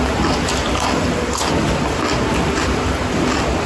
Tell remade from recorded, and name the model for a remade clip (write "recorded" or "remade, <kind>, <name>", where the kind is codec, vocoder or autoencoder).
recorded